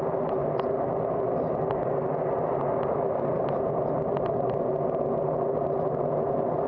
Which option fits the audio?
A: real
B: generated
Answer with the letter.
A